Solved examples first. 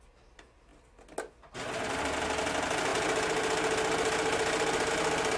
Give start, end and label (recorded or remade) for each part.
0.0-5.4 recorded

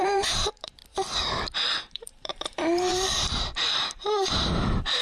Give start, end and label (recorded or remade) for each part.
0.0-0.8 remade; 0.8-1.8 recorded; 1.8-5.0 remade

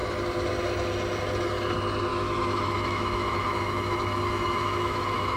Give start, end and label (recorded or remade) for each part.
0.0-2.1 recorded; 2.1-5.4 remade

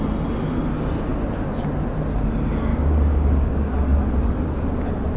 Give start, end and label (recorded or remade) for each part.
0.0-2.7 recorded; 2.7-3.7 remade; 3.7-5.2 recorded